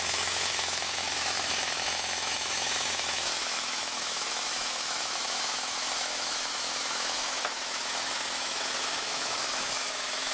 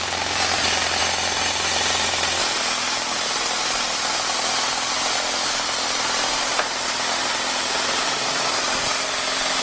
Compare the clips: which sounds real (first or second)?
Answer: second